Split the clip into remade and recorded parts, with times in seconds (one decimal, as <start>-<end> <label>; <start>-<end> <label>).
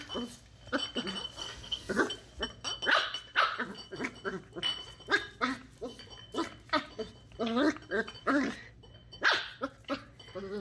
0.0-1.4 recorded; 1.4-2.0 remade; 2.0-10.6 recorded